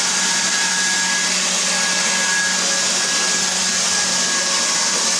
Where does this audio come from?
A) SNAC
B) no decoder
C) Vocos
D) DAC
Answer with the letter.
B